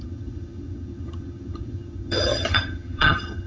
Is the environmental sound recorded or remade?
remade